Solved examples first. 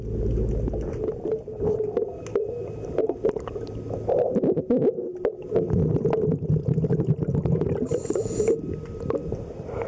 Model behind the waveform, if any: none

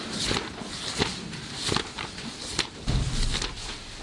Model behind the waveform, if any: none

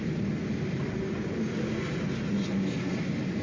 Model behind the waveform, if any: none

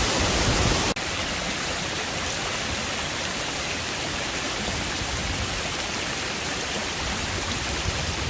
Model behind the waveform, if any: none